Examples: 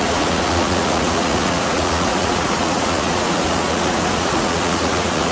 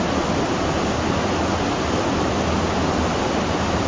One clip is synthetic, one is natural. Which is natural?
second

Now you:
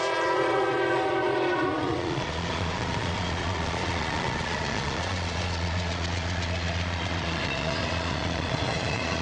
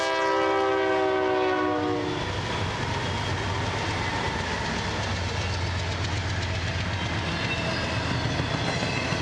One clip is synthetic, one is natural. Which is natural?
second